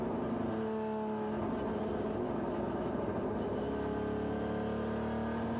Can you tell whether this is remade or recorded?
recorded